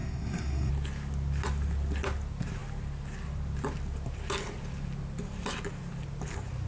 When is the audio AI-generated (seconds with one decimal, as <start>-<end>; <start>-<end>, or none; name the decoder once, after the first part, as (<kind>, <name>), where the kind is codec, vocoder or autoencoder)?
0.0-0.7 (codec, SNAC)